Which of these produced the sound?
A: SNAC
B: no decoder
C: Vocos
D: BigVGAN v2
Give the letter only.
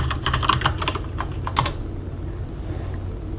B